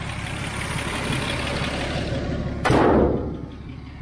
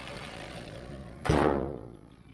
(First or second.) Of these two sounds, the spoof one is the second